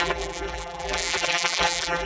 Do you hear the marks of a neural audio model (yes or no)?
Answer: yes